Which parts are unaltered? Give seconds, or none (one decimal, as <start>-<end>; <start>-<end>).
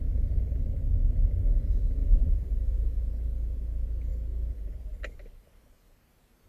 0.0-2.0; 3.1-6.5